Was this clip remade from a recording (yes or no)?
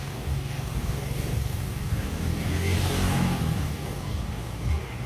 yes